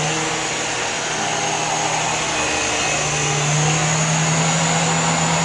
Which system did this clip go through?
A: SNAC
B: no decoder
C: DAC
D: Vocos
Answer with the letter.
B